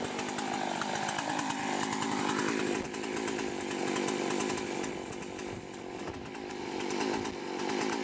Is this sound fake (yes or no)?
no